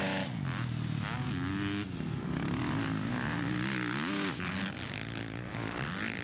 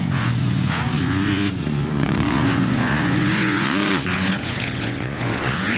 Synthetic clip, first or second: second